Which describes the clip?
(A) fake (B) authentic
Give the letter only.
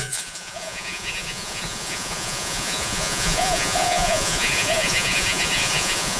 A